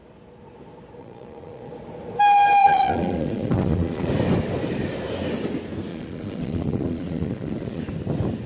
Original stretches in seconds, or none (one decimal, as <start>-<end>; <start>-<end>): 0.0-1.0; 1.7-2.6; 4.1-5.9; 7.8-8.5